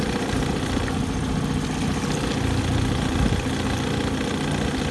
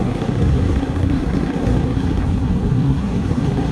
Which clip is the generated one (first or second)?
second